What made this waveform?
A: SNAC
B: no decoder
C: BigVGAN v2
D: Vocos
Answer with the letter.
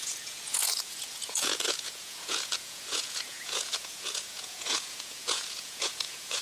D